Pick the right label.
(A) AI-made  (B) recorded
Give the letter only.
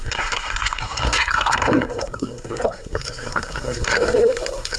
A